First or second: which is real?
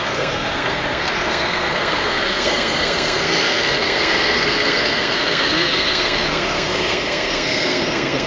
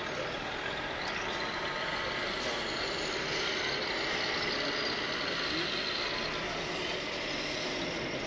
second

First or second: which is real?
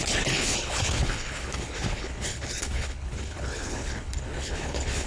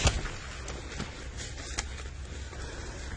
second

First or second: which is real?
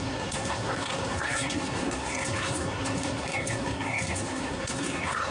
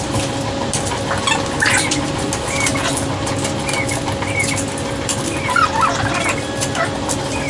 second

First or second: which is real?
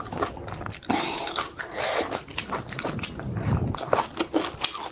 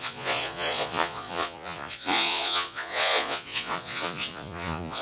first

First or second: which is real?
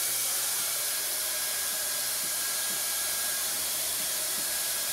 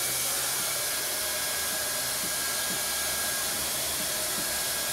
second